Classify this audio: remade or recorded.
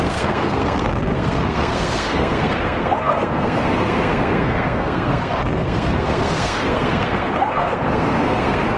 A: remade